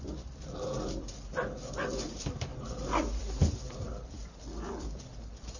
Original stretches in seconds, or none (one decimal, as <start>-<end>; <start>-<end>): none